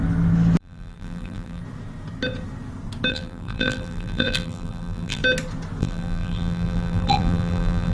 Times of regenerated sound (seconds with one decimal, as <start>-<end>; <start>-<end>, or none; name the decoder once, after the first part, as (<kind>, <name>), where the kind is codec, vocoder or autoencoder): 0.6-1.6 (vocoder, BigVGAN v2); 3.1-5.2; 5.8-7.9

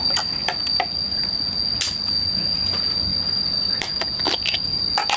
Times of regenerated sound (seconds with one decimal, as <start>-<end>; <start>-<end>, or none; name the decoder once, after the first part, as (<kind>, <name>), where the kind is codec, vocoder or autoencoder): 3.1-3.9 (vocoder, BigVGAN v2)

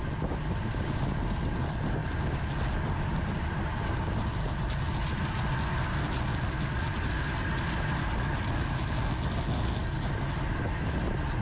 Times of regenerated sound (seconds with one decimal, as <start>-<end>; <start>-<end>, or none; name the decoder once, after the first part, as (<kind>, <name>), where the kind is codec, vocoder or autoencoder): 2.0-4.0 (vocoder, BigVGAN v2); 6.3-7.1

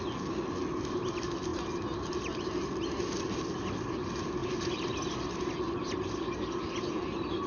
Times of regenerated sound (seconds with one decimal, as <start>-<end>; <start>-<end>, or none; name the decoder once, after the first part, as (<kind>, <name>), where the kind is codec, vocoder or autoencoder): none

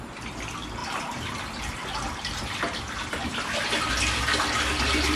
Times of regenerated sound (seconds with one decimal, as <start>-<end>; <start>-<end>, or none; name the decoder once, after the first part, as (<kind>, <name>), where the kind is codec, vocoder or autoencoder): 0.8-3.9 (vocoder, BigVGAN v2)

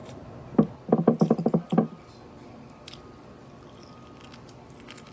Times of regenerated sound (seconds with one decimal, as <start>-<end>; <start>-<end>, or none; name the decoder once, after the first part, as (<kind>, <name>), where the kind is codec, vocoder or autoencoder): 0.0-0.7 (vocoder, BigVGAN v2)

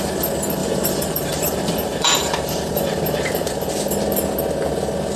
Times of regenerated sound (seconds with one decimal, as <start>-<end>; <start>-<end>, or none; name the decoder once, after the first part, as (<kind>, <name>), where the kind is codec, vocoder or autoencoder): 0.6-3.7 (vocoder, BigVGAN v2)